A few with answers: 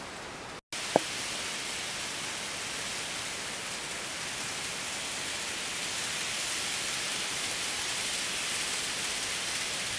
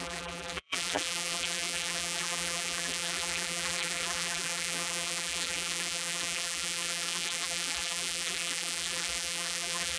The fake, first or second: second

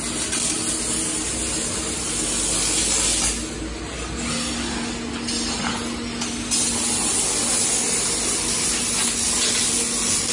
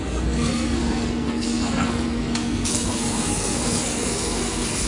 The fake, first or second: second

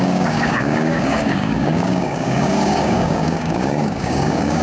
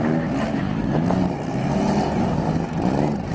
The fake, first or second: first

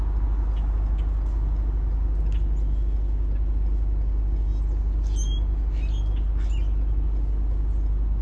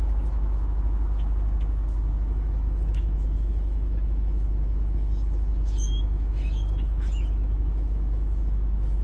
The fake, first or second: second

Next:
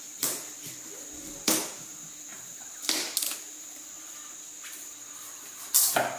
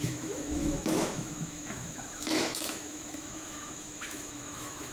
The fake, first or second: second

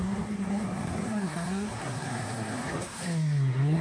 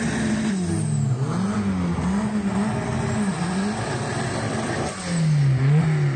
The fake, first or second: first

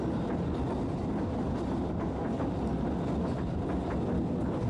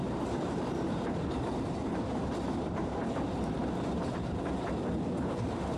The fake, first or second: second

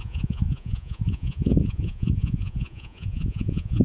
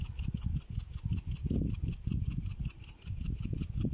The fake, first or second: first